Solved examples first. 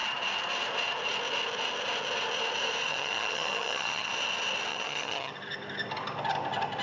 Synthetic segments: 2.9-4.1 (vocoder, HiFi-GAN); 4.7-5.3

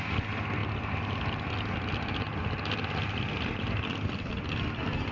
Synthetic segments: none

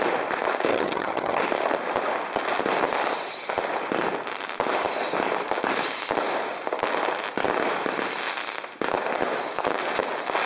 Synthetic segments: 0.7-1.4 (vocoder, HiFi-GAN)

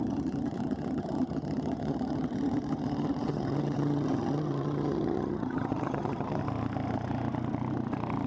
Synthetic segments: 0.0-6.4 (vocoder, HiFi-GAN)